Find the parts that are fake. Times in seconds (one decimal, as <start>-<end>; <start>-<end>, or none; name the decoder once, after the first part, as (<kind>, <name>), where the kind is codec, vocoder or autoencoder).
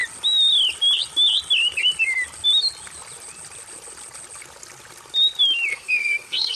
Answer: 5.7-6.6 (codec, SNAC)